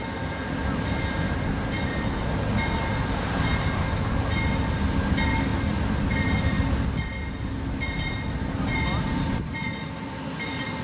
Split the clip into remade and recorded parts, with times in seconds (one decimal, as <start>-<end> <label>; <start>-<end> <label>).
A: 0.0-10.8 recorded